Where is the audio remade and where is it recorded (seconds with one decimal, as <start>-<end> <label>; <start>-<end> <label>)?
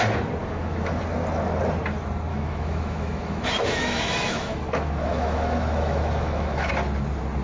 0.0-0.4 recorded; 0.4-1.0 remade; 1.0-2.3 recorded; 2.3-6.7 remade; 6.7-7.4 recorded